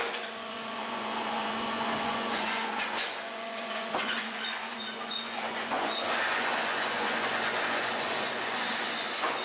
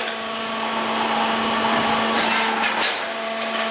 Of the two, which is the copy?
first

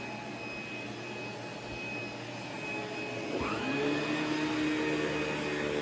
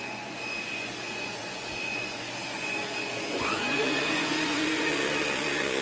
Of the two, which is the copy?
second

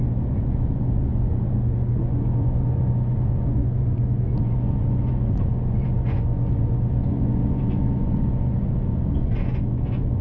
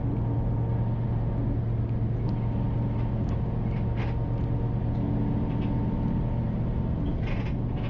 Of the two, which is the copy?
first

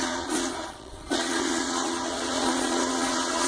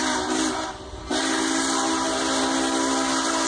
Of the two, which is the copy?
first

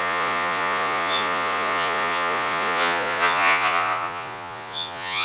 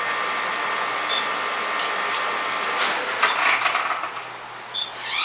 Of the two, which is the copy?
first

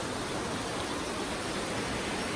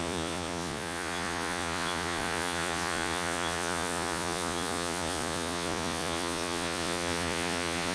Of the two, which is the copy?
second